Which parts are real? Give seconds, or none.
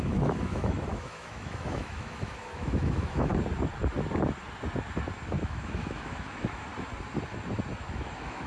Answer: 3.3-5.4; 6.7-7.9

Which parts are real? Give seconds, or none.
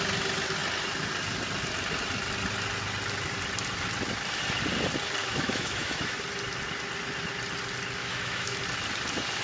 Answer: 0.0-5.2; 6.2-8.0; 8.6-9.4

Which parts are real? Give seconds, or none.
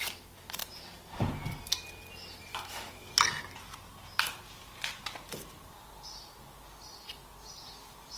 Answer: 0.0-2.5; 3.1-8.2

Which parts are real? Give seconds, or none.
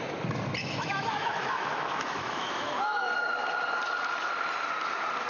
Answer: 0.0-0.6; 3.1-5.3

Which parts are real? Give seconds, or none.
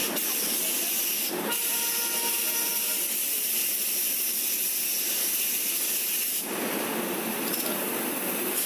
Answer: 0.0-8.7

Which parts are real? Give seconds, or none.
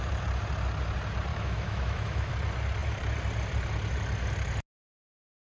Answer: 0.0-1.3; 2.3-5.4